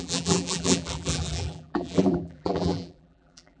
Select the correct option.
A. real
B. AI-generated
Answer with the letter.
B